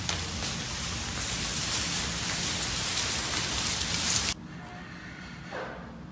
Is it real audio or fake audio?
real